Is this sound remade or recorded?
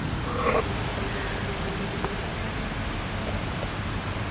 recorded